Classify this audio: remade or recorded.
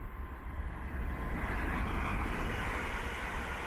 recorded